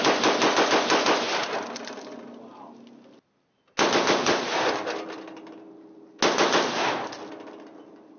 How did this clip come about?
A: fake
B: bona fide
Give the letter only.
B